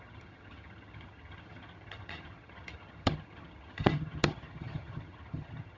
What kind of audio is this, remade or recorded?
remade